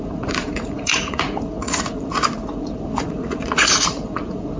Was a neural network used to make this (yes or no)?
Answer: yes